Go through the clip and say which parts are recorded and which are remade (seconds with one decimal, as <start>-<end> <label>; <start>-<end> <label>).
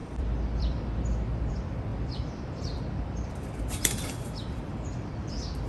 0.0-1.5 remade; 1.5-1.9 recorded; 1.9-5.3 remade; 5.3-5.7 recorded